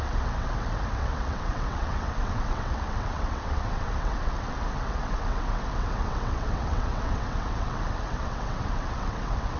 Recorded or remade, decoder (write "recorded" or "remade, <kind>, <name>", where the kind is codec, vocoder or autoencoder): remade, vocoder, WaveNeXt